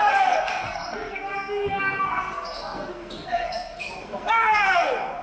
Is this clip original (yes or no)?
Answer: no